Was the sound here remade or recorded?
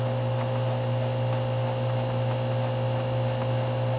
recorded